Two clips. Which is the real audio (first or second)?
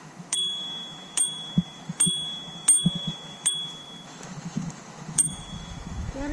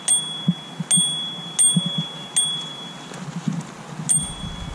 second